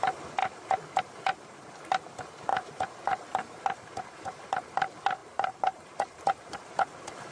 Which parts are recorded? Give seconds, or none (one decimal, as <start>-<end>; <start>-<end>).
0.0-2.5; 4.6-5.2; 6.7-7.3